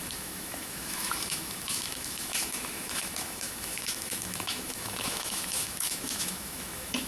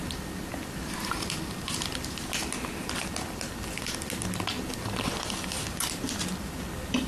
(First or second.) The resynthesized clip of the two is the first